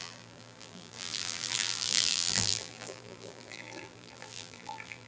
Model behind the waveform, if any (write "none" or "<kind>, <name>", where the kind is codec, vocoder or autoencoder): vocoder, BigVGAN v2